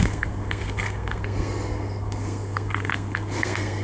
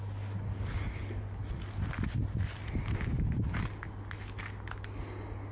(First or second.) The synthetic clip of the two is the first